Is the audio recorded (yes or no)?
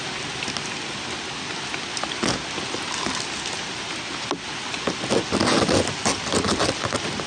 yes